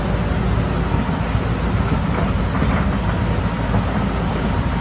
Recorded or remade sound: recorded